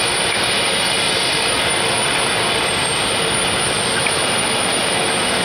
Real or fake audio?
real